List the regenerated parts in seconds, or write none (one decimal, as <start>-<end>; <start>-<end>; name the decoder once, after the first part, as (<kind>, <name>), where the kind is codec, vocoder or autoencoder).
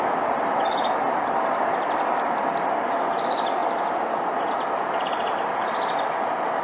none